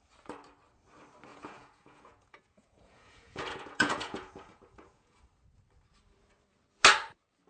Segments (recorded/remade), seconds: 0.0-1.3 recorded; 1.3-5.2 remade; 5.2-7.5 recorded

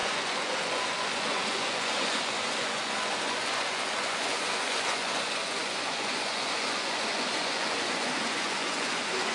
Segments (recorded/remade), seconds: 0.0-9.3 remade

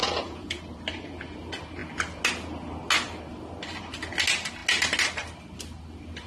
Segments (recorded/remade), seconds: 0.0-0.6 remade; 0.6-6.3 recorded